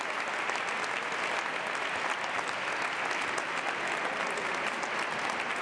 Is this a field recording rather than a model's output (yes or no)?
yes